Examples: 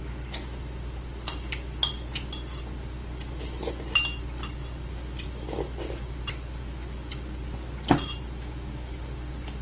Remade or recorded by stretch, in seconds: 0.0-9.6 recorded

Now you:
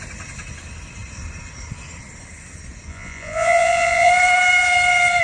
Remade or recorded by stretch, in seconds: 0.0-2.9 recorded; 2.9-4.1 remade; 4.1-5.2 recorded

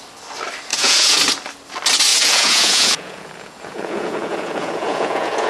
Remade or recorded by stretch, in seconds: 0.0-0.7 recorded; 0.7-1.2 remade; 1.2-2.1 recorded; 2.1-5.5 remade

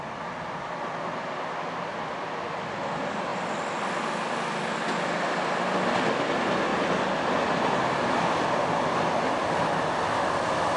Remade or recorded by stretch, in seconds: 0.0-10.8 recorded